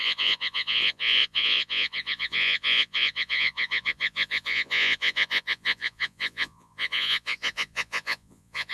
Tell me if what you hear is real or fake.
fake